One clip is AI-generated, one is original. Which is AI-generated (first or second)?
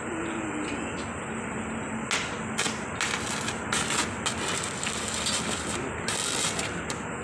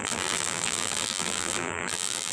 second